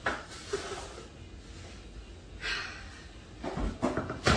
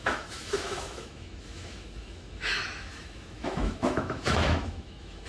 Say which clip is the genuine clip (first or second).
first